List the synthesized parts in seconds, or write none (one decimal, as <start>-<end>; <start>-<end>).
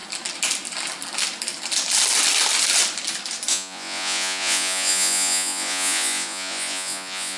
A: 3.5-7.4